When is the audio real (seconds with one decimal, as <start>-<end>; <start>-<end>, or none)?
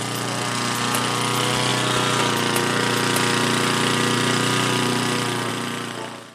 0.0-6.3